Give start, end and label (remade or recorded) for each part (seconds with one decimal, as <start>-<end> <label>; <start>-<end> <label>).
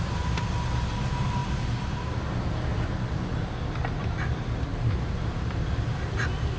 0.0-4.7 recorded; 4.7-5.7 remade; 5.7-6.6 recorded